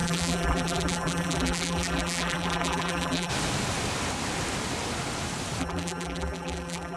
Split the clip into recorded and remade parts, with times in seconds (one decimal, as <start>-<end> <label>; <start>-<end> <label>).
0.0-3.3 remade; 3.3-5.6 recorded; 5.6-7.0 remade